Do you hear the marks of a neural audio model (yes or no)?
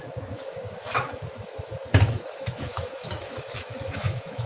yes